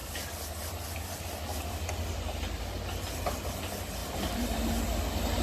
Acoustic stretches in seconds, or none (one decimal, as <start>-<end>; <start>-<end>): 0.0-5.4